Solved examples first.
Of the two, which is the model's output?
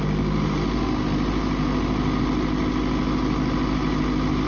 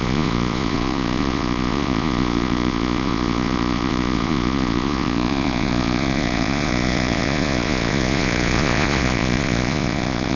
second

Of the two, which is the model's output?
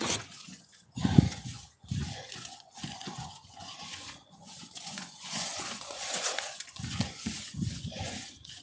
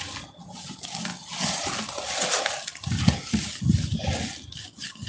first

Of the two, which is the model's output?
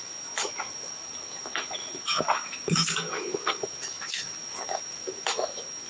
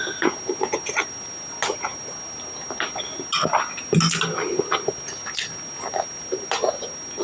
first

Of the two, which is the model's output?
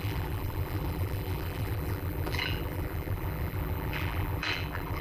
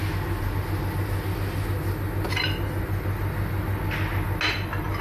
first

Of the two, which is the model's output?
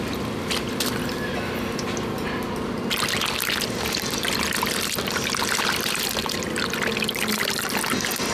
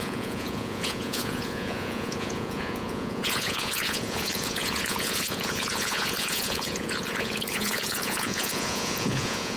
second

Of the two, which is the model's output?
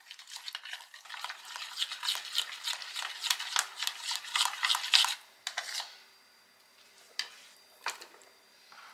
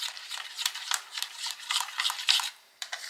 second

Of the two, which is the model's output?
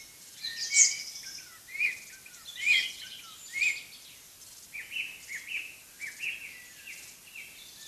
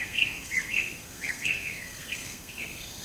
second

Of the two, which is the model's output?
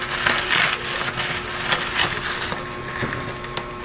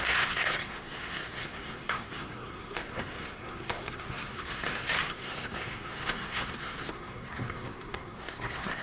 second